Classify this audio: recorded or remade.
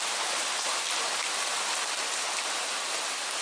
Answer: recorded